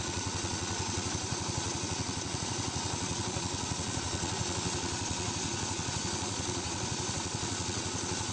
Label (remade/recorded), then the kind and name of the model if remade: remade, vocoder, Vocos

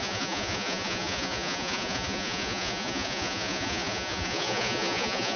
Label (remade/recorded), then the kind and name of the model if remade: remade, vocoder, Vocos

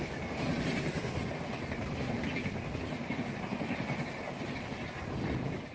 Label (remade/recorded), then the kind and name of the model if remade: recorded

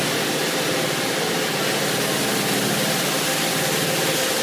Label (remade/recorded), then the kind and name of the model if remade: recorded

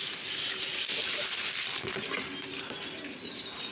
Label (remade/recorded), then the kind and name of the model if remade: recorded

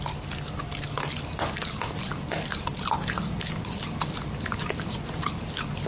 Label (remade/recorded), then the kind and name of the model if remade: recorded